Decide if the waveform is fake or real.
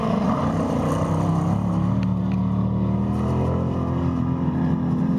real